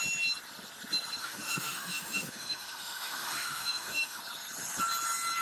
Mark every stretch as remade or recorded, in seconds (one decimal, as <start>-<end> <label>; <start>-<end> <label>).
0.0-1.2 recorded; 1.2-4.2 remade; 4.2-5.4 recorded